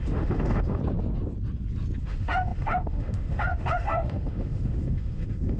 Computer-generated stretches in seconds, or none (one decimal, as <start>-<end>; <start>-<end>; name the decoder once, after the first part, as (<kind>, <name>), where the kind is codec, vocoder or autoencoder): 0.0-0.8 (autoencoder, DAC-VAE); 2.0-5.6